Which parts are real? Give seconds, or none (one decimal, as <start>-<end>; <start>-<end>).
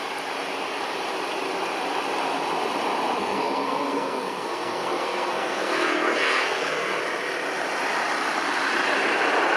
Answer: 0.0-3.2; 7.0-9.6